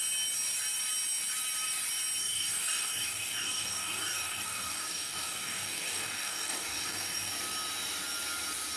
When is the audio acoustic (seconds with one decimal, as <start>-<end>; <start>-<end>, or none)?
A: 0.0-2.2; 7.3-8.8